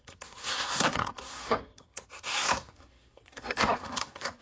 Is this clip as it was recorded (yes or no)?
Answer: no